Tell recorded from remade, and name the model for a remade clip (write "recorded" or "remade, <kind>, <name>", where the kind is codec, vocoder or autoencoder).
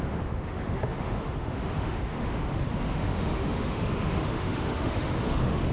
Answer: remade, autoencoder, DAC-VAE